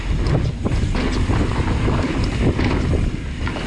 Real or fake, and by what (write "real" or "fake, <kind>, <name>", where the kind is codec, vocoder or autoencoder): real